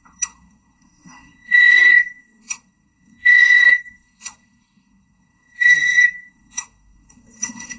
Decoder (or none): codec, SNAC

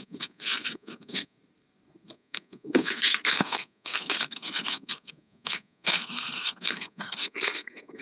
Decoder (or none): codec, SNAC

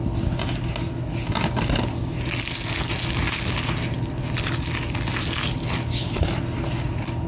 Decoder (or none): none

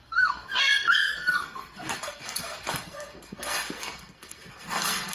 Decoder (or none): codec, SNAC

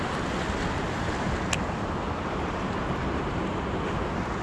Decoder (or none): none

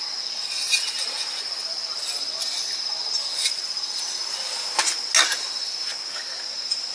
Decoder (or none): none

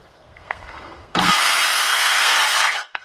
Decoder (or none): codec, SNAC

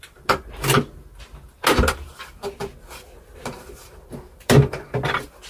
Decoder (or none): none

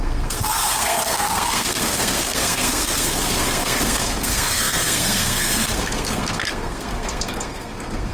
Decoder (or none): codec, SNAC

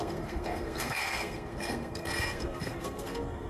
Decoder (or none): codec, SNAC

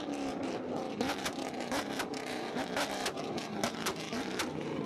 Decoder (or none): none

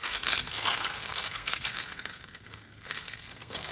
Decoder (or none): codec, SNAC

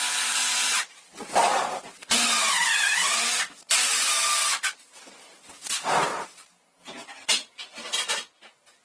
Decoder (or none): none